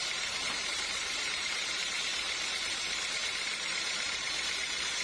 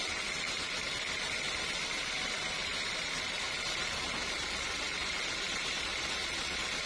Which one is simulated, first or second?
first